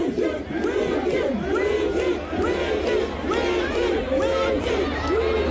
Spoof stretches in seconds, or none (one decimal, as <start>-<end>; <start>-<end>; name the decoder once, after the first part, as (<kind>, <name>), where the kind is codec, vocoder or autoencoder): 0.0-0.6 (vocoder, BigVGAN v2)